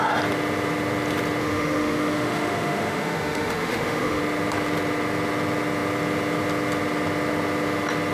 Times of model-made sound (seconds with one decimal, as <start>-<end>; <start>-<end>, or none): 1.4-4.2